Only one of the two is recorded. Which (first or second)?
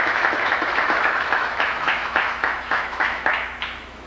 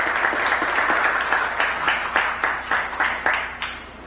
second